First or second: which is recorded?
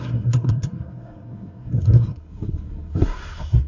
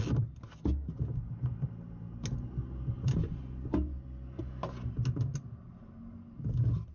second